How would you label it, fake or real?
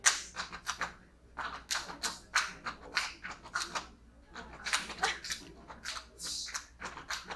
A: real